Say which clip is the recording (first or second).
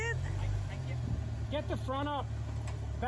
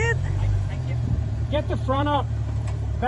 first